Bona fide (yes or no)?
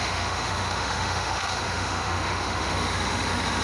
no